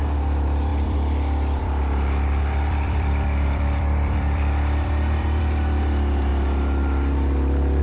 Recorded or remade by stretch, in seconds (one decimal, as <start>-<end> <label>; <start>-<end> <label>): 0.0-0.7 recorded; 0.7-5.4 remade; 5.4-7.8 recorded